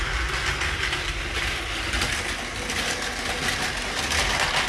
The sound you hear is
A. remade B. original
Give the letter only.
B